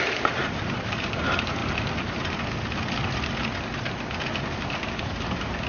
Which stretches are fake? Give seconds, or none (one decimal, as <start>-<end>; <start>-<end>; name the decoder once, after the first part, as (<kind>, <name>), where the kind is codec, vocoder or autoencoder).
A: 0.0-1.6 (vocoder, BigVGAN v2); 5.0-5.7